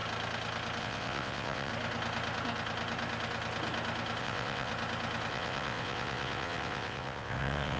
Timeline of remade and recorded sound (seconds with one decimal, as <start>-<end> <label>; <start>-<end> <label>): 0.0-0.8 recorded; 0.8-1.7 remade; 1.7-4.2 recorded; 4.2-4.7 remade; 4.7-5.3 recorded; 5.3-7.8 remade